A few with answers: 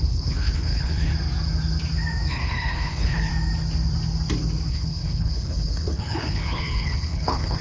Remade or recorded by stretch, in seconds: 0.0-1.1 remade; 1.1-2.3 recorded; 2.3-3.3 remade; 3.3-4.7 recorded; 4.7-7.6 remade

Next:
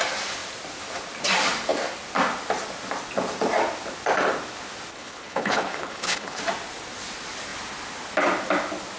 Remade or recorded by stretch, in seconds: 0.0-4.9 recorded; 4.9-6.4 remade; 6.4-9.0 recorded

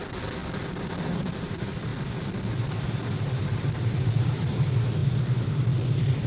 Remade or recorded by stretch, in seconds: 0.0-6.3 recorded

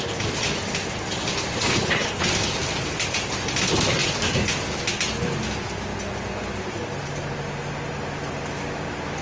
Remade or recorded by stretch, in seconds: 0.0-1.6 recorded; 1.6-2.2 remade; 2.2-9.2 recorded